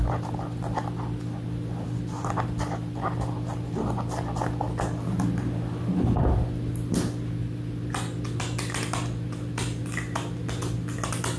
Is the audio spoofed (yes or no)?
no